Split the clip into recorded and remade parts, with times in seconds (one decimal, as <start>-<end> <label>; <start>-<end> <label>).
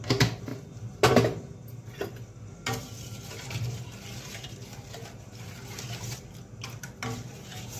0.0-7.8 recorded